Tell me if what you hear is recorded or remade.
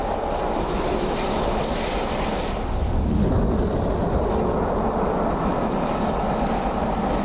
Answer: recorded